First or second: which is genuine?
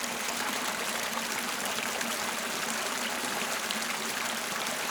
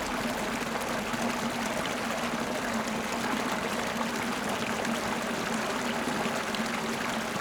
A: second